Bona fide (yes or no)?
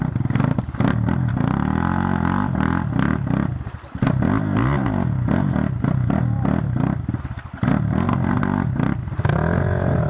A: yes